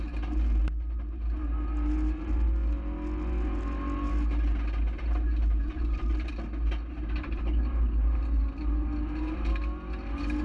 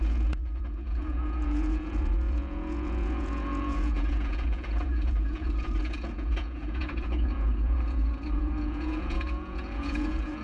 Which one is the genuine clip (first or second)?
first